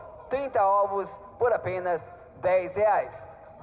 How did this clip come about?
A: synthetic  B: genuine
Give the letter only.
B